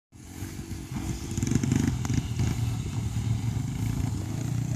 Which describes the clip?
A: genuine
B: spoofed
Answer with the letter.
A